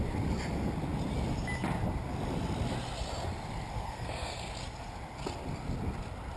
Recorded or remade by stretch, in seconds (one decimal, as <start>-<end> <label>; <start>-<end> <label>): 0.0-3.8 recorded; 3.8-4.5 remade; 4.5-6.4 recorded

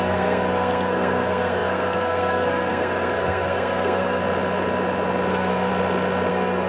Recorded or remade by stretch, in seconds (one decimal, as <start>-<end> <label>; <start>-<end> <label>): 0.0-4.2 remade; 4.2-5.3 recorded; 5.3-5.7 remade; 5.7-6.3 recorded; 6.3-6.7 remade

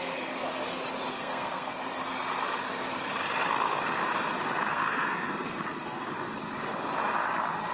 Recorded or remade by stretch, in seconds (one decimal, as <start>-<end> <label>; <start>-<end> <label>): 0.0-1.1 recorded; 1.1-1.7 remade; 1.7-4.7 recorded; 4.7-6.1 remade; 6.1-7.7 recorded

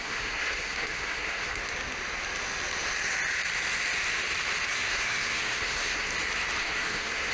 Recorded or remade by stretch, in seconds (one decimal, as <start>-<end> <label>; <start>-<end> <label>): 0.0-1.6 remade; 1.6-4.7 recorded; 4.7-6.1 remade; 6.1-6.6 recorded; 6.6-7.3 remade

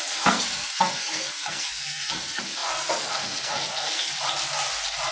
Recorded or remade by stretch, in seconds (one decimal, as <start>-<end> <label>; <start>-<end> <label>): 0.0-4.1 remade; 4.1-5.1 recorded

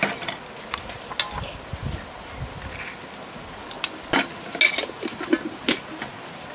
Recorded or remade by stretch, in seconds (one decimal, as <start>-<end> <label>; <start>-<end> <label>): 0.0-6.5 recorded

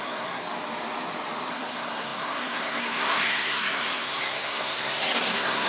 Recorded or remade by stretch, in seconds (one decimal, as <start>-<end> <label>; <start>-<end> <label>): 0.0-0.4 remade; 0.4-1.5 recorded; 1.5-5.7 remade